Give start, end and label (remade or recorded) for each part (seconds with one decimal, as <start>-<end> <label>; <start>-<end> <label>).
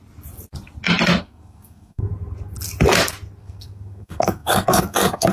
0.0-1.2 recorded; 1.2-2.1 remade; 2.1-3.4 recorded; 3.4-5.3 remade